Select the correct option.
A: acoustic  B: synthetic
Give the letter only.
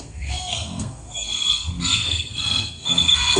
B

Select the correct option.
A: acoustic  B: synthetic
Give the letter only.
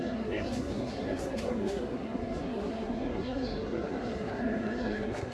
B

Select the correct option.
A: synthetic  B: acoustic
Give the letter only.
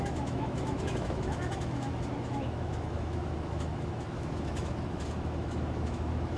A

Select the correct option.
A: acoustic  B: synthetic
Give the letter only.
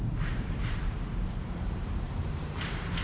B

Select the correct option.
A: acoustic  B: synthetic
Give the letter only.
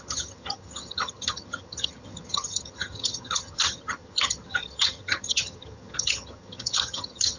B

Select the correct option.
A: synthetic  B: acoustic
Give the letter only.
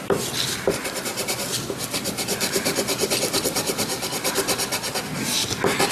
B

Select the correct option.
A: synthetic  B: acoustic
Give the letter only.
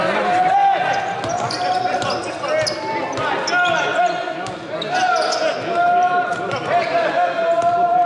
B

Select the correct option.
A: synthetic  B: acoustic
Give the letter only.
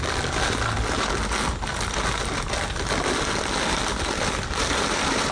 B